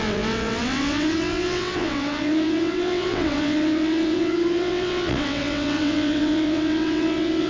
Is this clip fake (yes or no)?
yes